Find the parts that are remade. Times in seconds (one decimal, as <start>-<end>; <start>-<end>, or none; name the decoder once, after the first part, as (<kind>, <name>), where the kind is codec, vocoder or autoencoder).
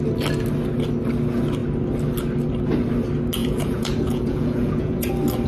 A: 3.4-5.1 (vocoder, Vocos)